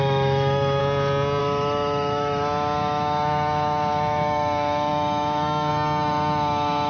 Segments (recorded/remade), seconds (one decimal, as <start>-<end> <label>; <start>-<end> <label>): 0.0-0.8 remade; 0.8-1.4 recorded; 1.4-6.9 remade